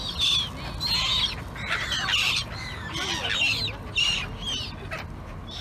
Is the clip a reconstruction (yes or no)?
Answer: no